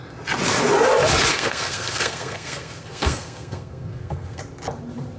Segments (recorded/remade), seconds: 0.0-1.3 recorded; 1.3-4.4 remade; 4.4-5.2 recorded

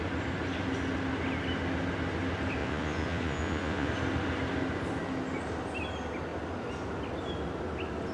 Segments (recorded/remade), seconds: 0.0-2.6 recorded; 2.6-3.9 remade; 3.9-8.1 recorded

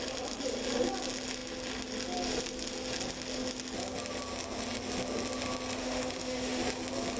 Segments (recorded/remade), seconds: 0.0-5.8 recorded; 5.8-6.6 remade; 6.6-7.2 recorded